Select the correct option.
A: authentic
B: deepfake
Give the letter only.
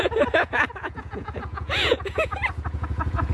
B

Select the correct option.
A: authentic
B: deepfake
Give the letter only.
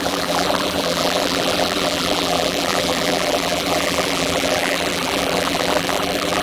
B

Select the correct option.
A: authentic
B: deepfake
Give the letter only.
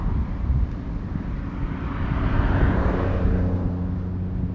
A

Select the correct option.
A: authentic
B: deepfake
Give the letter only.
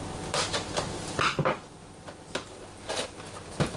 A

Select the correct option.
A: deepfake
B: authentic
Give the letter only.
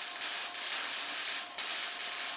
B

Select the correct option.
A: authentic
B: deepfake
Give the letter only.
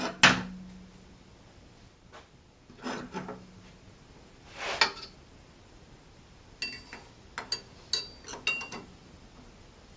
A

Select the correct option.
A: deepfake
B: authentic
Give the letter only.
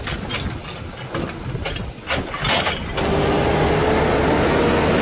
B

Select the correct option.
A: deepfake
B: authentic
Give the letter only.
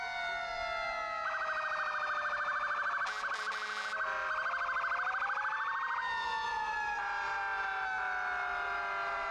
B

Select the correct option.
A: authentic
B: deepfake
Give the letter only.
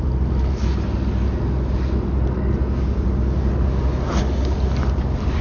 A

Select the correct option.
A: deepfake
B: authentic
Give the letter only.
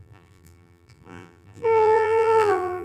A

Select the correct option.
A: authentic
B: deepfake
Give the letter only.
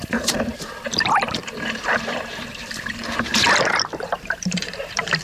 B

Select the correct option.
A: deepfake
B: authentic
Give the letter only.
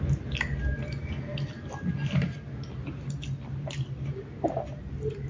B